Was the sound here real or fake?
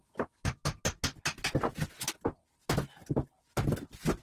real